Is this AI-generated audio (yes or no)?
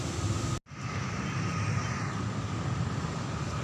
no